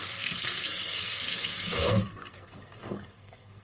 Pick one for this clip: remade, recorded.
remade